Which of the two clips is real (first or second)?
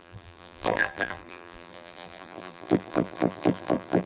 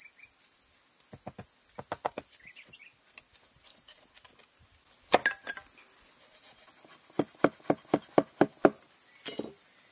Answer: second